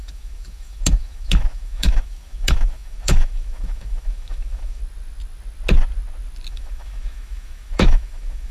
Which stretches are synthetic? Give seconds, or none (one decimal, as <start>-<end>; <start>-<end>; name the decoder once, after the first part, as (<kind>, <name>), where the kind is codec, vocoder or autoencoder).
0.0-4.8 (autoencoder, DAC-VAE); 6.5-8.5